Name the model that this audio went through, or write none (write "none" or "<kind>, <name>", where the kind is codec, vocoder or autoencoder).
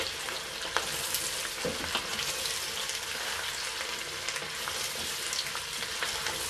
none